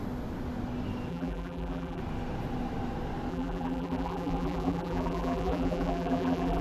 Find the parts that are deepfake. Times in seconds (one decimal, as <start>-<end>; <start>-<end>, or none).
1.1-2.0; 3.3-6.6

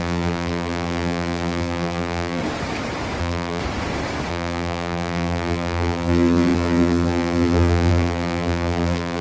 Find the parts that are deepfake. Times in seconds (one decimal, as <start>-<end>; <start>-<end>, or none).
0.0-2.4; 3.2-3.6; 4.3-9.2